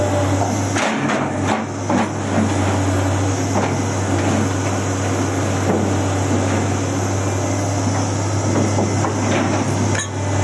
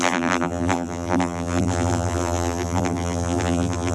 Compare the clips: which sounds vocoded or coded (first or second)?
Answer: second